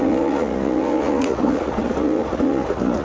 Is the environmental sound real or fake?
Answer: fake